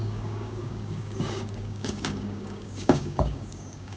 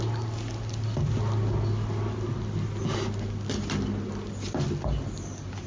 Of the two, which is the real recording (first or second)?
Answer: second